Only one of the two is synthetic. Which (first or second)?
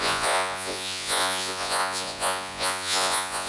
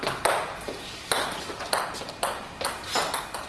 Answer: first